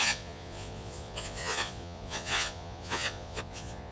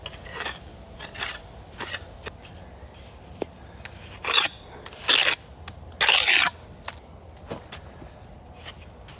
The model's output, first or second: first